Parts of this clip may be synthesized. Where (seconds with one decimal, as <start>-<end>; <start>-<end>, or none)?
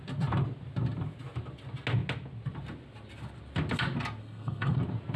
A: 4.2-4.8